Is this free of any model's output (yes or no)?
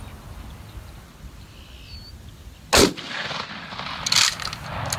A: yes